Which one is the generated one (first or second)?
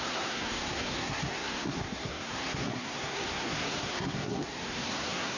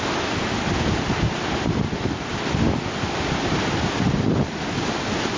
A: first